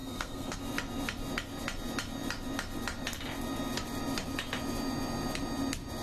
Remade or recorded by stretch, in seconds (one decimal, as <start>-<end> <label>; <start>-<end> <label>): 0.0-0.6 remade; 0.6-6.0 recorded